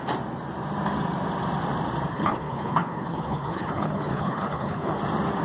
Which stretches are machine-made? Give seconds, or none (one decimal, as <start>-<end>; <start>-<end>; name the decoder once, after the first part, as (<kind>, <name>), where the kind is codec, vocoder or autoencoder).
2.1-5.0 (codec, HILCodec)